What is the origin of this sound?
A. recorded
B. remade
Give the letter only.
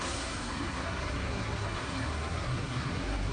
B